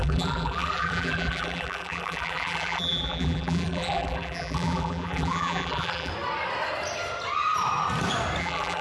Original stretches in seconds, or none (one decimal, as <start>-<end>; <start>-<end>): 6.1-8.4